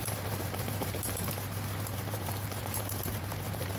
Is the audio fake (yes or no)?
yes